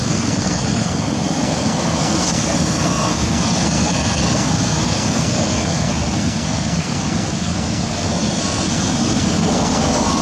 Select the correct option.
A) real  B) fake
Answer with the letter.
B